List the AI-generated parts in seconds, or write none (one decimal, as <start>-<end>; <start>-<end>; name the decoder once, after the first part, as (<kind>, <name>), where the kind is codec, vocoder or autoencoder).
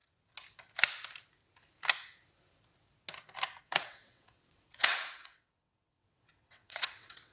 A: 3.6-7.3 (vocoder, WaveNeXt)